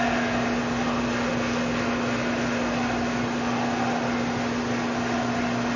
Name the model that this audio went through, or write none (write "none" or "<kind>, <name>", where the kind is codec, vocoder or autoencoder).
none